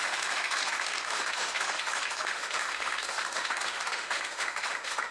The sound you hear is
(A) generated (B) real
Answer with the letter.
A